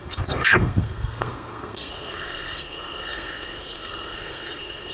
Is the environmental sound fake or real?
fake